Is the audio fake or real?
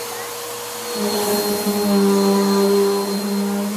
real